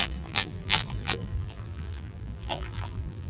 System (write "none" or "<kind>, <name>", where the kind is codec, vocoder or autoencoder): vocoder, BigVGAN v2